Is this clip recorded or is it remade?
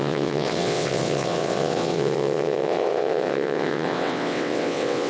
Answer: remade